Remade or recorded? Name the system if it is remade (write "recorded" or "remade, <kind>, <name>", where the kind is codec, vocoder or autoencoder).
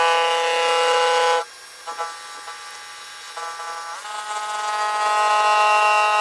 recorded